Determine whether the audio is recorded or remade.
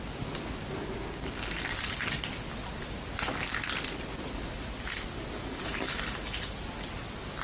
recorded